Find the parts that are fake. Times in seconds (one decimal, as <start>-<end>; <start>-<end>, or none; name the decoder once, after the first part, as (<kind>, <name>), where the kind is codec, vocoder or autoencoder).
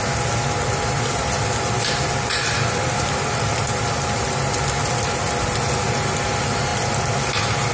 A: none